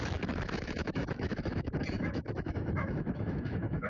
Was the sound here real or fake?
fake